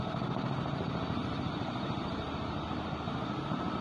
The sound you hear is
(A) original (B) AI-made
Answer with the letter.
B